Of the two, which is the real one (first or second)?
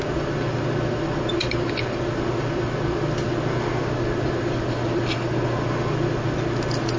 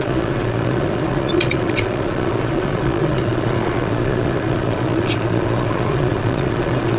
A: first